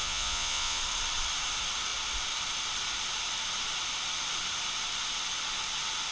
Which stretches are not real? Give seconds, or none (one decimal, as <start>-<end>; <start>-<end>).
0.0-0.8

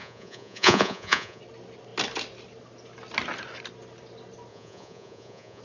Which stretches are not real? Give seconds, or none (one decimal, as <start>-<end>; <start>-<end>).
0.0-1.4; 4.5-5.6

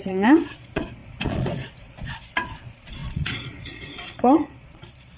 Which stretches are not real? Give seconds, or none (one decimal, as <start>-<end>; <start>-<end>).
0.0-5.2

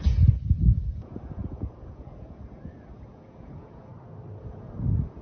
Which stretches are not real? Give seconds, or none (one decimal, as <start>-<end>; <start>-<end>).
0.0-3.9; 4.4-5.2